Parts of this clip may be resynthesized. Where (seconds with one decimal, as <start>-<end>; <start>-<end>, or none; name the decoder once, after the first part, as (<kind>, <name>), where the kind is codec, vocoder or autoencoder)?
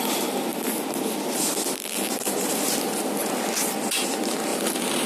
4.5-5.1 (vocoder, BigVGAN v2)